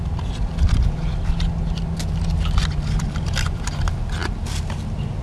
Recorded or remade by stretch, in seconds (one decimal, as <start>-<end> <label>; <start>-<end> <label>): 0.0-5.2 recorded